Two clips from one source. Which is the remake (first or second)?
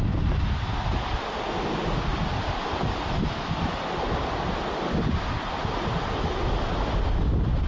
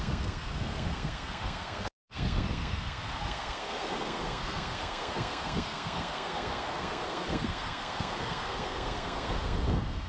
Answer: second